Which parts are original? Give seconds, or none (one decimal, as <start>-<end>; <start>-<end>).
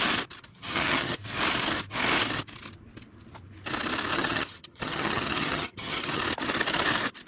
0.0-0.5; 1.2-4.1; 6.2-7.3